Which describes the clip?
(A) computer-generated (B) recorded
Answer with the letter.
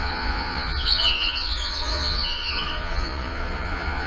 A